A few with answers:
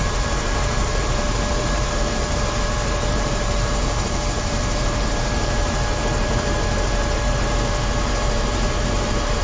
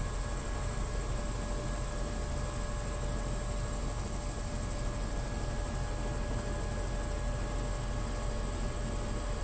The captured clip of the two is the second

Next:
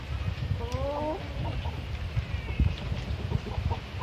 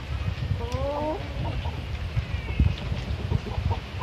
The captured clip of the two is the second